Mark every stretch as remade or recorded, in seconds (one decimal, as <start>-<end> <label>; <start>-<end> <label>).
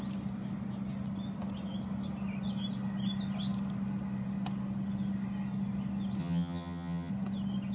0.0-6.2 recorded; 6.2-7.1 remade; 7.1-7.7 recorded